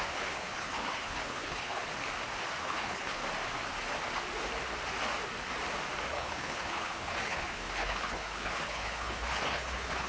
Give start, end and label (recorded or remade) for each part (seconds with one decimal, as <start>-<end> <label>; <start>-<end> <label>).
0.0-1.8 remade; 1.8-2.6 recorded; 2.6-3.2 remade; 3.2-6.1 recorded; 6.1-10.1 remade